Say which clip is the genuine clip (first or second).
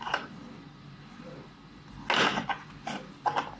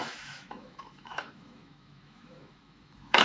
first